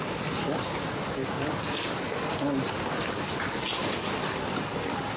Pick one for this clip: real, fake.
real